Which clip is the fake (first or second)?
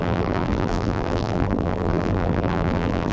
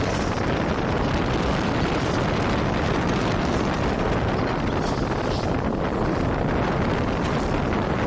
first